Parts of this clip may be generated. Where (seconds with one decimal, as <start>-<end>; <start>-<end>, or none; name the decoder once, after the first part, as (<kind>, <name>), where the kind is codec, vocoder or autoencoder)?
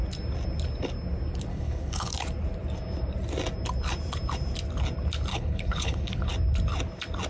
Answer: 1.5-2.1 (codec, HILCodec); 5.3-6.3